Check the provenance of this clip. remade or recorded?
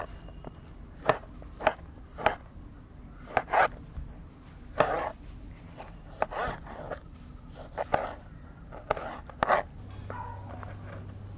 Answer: recorded